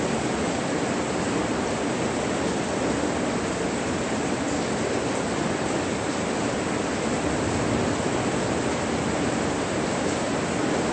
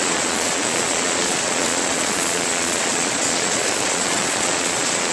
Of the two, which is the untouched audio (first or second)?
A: first